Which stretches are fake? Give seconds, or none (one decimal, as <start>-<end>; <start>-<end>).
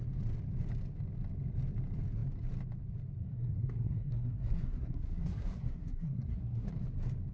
3.2-6.7